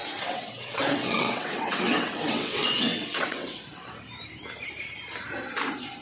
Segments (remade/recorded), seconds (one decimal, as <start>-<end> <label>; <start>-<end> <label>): 0.0-3.6 remade; 3.6-6.0 recorded